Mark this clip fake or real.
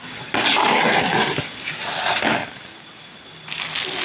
real